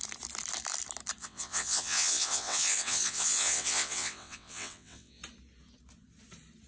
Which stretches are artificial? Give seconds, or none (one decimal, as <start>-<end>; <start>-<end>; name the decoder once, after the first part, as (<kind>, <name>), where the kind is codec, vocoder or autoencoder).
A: 1.2-5.2 (vocoder, WaveNeXt)